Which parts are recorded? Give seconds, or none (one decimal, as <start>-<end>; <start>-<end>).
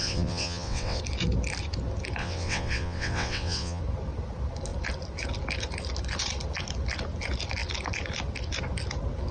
1.0-2.2; 3.8-9.3